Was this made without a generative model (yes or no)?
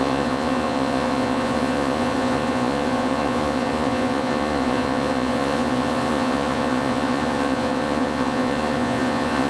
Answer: no